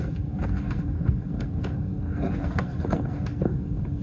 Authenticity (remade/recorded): remade